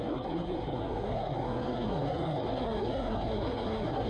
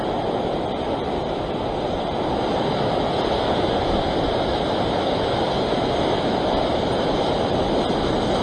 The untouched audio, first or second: second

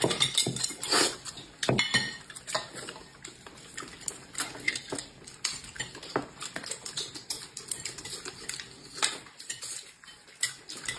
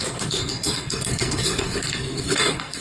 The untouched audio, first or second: first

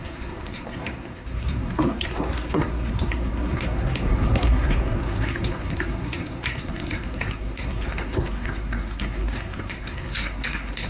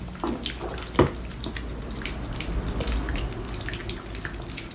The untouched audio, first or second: second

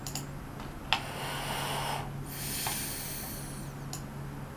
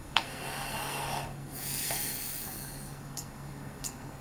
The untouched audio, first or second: first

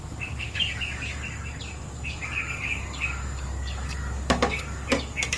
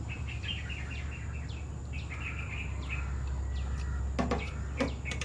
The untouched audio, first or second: second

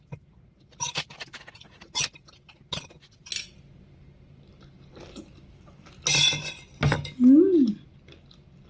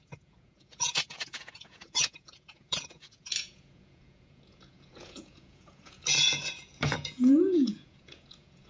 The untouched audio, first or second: first